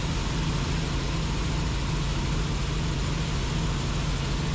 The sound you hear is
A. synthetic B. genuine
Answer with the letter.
B